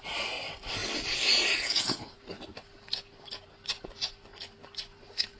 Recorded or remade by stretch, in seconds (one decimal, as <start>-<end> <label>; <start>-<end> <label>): 0.0-5.4 recorded